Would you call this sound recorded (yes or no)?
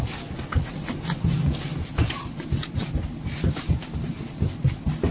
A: yes